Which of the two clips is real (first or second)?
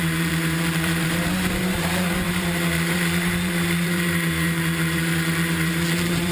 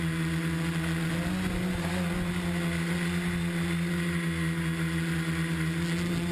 second